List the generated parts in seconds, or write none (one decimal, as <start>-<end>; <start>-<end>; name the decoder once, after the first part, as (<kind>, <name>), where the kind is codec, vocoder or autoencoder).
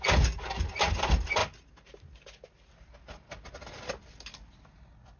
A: none